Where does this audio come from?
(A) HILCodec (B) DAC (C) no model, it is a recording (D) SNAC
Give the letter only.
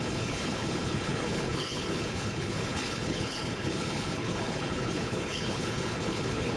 A